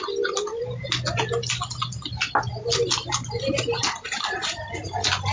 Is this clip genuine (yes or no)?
yes